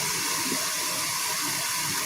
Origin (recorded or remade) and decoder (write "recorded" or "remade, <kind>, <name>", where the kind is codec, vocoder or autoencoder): recorded